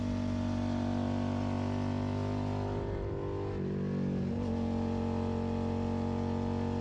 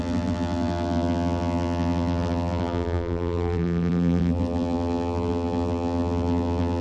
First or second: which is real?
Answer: first